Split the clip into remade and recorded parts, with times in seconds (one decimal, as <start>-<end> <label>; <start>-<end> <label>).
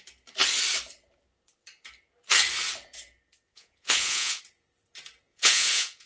0.0-3.5 recorded; 3.5-4.4 remade; 4.4-5.3 recorded; 5.3-6.1 remade